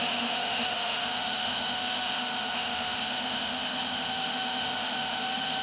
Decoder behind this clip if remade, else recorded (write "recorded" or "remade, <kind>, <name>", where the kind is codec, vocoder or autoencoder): remade, autoencoder, DAC-VAE